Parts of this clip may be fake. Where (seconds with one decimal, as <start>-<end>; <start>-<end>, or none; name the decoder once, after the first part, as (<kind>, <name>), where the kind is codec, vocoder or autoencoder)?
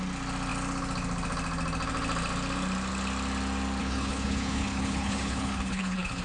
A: 3.8-6.2 (codec, HILCodec)